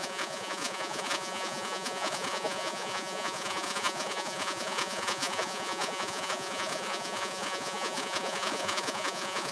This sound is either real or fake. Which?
fake